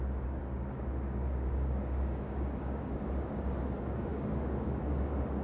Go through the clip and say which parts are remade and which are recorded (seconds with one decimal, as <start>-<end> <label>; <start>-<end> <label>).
0.0-5.4 remade